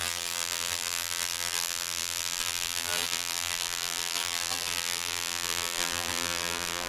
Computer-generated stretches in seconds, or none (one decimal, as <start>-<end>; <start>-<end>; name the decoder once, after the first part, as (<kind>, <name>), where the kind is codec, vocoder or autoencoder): 0.0-6.9 (vocoder, BigVGAN v2)

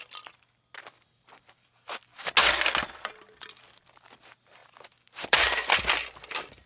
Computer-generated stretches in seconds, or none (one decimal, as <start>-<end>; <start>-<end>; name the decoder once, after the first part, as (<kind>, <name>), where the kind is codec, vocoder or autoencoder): 4.6-5.8 (vocoder, BigVGAN v2)